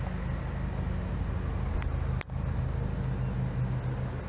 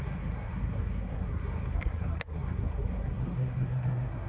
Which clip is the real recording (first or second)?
first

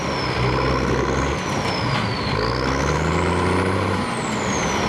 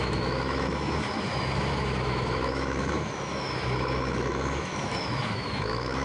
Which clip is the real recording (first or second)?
first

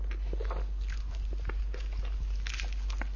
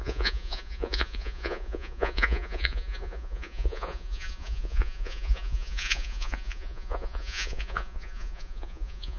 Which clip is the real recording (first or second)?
first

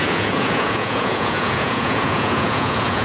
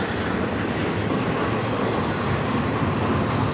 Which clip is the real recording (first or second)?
second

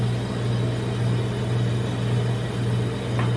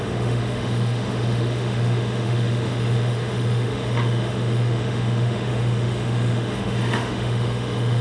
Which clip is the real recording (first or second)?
first